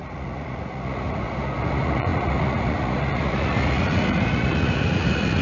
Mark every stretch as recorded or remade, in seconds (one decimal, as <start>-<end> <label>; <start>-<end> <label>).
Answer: 0.0-5.4 remade